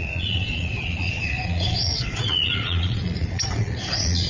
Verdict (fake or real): fake